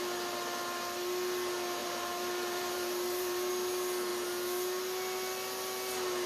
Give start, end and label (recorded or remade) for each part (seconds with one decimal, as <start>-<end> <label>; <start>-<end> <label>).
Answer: 0.0-1.8 recorded; 1.8-3.5 remade; 3.5-6.3 recorded